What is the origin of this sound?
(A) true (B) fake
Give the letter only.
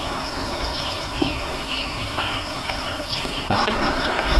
B